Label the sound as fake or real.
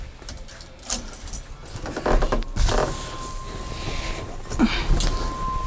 real